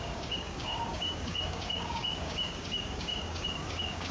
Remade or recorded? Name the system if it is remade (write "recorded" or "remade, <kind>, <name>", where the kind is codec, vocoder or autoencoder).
remade, codec, DAC